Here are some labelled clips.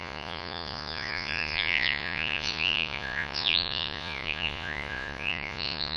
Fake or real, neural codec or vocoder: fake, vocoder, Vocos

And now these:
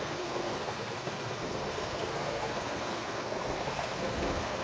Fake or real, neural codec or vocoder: fake, codec, SNAC